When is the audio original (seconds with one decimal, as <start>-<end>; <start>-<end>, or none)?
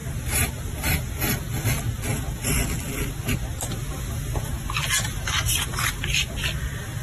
1.1-7.0